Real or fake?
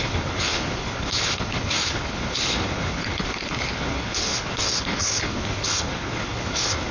fake